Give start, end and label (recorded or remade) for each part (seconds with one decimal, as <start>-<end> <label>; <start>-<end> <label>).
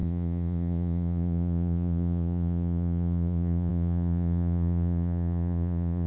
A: 0.0-6.1 remade